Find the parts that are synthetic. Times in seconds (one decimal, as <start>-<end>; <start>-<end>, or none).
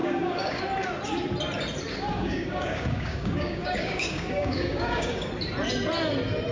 0.0-0.6; 2.1-5.3